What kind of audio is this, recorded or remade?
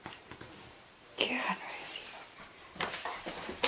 remade